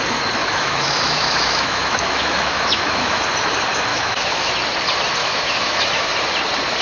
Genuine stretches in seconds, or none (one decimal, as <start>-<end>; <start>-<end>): 0.0-0.4; 3.2-3.9; 4.5-5.2; 6.1-6.8